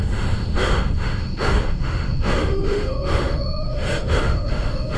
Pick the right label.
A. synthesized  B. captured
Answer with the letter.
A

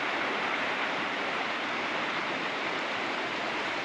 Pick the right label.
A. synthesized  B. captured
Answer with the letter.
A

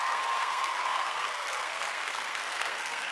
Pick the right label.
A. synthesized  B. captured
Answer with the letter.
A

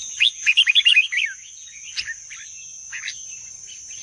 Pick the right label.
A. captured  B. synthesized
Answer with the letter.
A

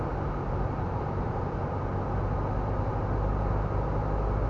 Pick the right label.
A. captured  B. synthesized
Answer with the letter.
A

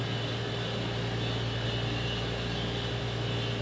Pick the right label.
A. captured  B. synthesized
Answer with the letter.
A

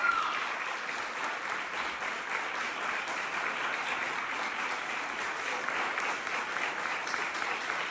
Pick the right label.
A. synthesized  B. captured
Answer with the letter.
B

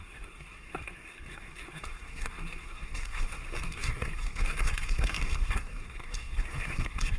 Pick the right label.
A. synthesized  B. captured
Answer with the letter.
A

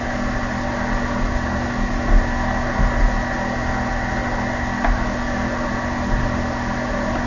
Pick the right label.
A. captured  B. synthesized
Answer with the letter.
A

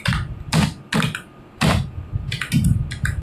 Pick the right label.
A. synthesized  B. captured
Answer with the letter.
B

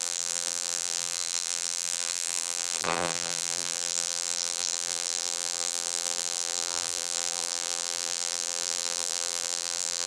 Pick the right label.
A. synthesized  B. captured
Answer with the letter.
A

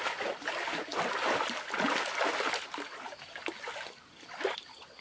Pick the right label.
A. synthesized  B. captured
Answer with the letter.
B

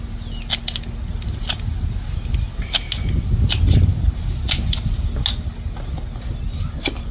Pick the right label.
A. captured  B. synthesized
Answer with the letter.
A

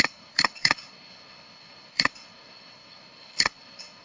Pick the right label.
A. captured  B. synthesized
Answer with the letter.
B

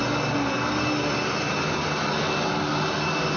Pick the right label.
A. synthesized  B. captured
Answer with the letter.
B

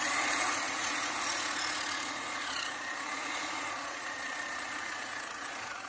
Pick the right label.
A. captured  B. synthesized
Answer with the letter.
B